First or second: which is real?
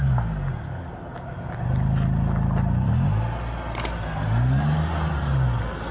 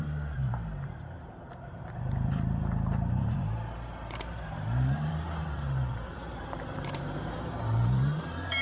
first